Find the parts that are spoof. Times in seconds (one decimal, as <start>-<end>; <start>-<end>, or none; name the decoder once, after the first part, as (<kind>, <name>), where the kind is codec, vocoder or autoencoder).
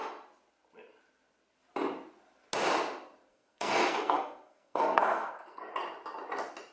3.3-5.7 (codec, SNAC)